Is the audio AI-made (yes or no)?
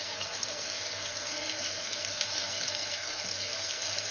yes